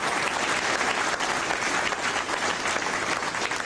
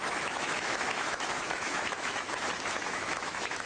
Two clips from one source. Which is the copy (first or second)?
second